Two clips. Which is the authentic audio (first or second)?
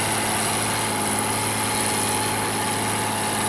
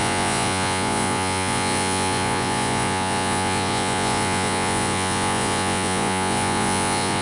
first